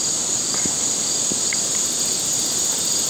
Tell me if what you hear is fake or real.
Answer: real